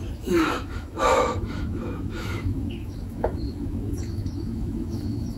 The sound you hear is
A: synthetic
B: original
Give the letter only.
A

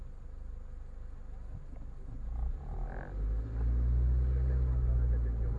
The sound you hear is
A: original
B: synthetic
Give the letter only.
A